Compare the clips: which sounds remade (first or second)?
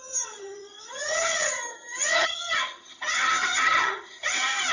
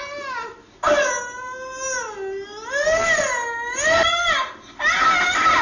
first